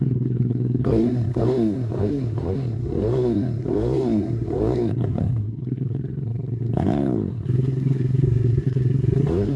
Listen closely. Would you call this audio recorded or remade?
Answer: remade